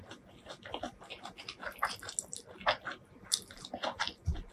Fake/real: real